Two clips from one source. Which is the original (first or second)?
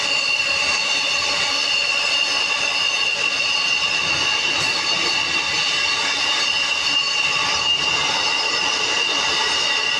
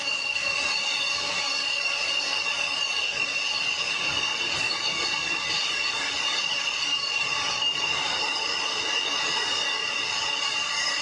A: first